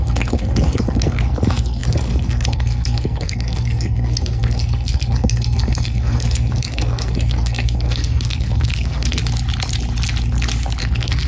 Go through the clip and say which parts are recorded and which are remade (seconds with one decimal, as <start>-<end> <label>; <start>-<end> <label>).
0.0-9.2 remade; 9.2-10.8 recorded; 10.8-11.3 remade